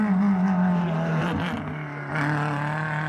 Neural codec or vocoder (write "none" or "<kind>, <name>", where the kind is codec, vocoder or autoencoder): none